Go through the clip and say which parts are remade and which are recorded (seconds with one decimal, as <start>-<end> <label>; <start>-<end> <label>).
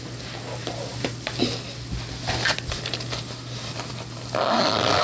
0.0-5.0 recorded